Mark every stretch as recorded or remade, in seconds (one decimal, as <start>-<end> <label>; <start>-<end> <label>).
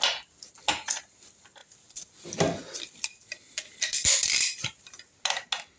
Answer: 0.0-1.6 recorded; 1.6-5.0 remade; 5.0-5.8 recorded